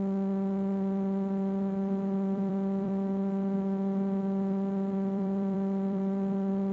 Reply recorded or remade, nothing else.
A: remade